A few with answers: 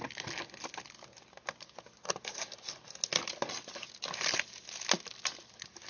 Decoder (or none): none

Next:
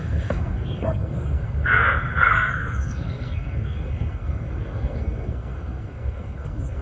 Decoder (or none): codec, SNAC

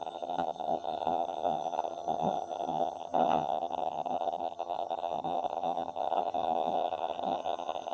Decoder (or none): vocoder, HiFi-GAN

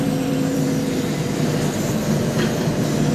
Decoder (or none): vocoder, BigVGAN v2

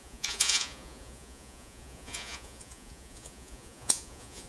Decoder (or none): vocoder, Vocos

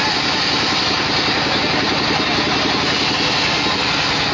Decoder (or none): none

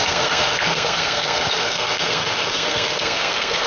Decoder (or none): codec, SNAC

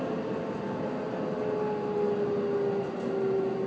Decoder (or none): none